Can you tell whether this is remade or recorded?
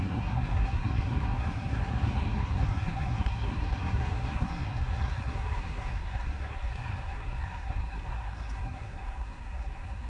remade